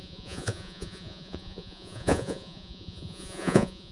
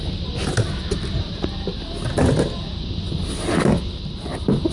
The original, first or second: second